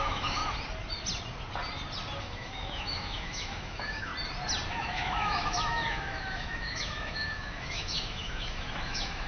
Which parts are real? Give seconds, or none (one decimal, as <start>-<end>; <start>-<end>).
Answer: 0.4-2.2; 4.1-4.7